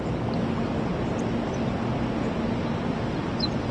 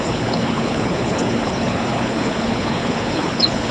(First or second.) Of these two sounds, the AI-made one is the second